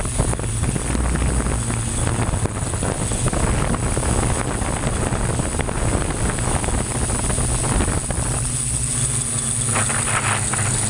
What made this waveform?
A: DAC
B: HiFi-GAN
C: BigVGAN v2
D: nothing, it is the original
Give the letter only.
D